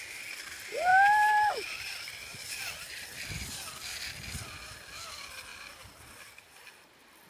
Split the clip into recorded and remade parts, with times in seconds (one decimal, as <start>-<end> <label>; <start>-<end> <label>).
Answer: 0.0-7.3 recorded